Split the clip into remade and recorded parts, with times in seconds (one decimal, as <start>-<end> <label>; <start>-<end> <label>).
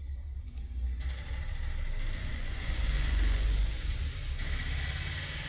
0.0-2.3 recorded; 2.3-4.0 remade; 4.0-5.5 recorded